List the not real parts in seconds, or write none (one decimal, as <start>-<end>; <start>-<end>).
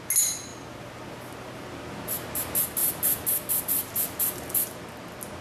none